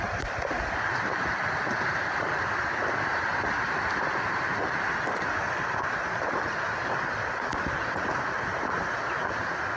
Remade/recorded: recorded